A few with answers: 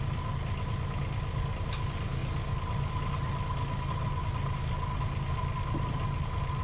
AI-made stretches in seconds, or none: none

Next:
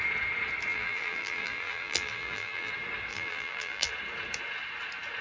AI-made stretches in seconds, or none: 0.7-2.7 (vocoder, BigVGAN v2); 3.1-3.9

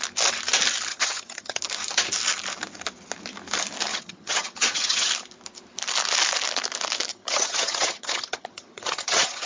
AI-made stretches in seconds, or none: 0.9-1.6 (vocoder, HiFi-GAN); 3.9-5.1; 7.1-9.5

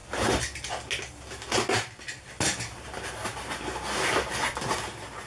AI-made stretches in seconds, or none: none

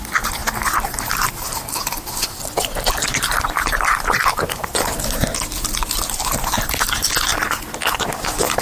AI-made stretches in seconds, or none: none

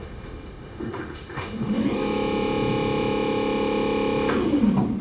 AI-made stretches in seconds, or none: 0.0-1.8 (autoencoder, DAC-VAE)

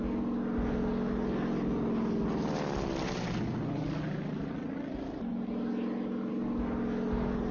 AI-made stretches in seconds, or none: none

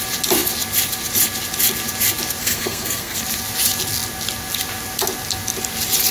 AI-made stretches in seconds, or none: 2.4-3.2 (codec, SNAC)